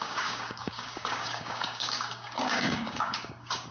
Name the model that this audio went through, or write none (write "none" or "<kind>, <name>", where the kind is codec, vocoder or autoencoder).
codec, DAC